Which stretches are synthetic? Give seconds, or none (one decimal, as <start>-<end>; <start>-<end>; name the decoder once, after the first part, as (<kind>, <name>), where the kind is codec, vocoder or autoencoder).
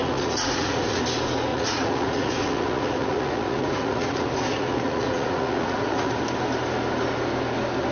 0.0-1.0 (vocoder, Vocos); 1.5-6.2